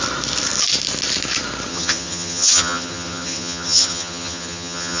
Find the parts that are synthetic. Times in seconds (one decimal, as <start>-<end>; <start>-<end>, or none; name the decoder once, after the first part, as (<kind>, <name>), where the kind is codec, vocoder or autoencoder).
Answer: 1.7-5.0 (vocoder, HiFi-GAN)